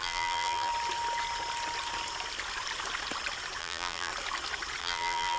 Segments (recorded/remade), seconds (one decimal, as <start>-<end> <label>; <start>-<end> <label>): 0.0-0.7 remade; 0.7-3.6 recorded; 3.6-4.1 remade; 4.1-4.8 recorded; 4.8-5.4 remade